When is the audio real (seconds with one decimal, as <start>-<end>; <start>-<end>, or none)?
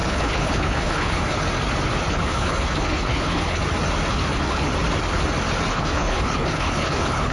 1.4-2.1; 3.6-4.1; 4.7-5.7